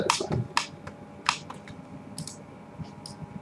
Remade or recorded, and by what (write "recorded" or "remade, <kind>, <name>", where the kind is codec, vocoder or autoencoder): recorded